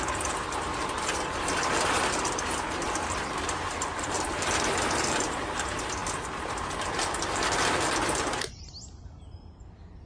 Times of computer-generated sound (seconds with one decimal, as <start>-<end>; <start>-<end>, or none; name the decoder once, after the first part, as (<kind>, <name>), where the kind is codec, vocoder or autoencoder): 0.0-6.0 (vocoder, BigVGAN v2); 8.8-10.1